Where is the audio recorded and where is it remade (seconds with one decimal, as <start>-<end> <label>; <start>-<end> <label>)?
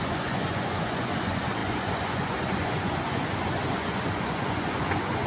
0.0-5.3 remade